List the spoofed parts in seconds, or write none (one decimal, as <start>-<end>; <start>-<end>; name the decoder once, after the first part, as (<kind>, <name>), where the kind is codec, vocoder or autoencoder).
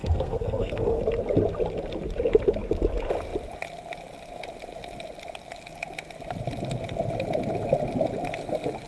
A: 0.0-1.0 (codec, SNAC)